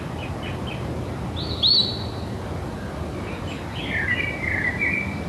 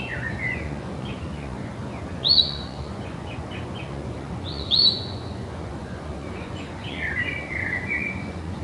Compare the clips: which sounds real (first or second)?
first